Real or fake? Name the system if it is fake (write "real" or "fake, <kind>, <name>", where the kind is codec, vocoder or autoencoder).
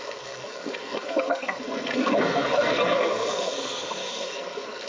fake, codec, SNAC